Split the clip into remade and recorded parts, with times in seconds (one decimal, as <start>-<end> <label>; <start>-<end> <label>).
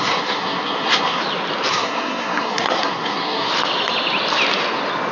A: 0.0-1.2 remade; 1.2-1.7 recorded; 1.7-3.5 remade; 3.5-5.1 recorded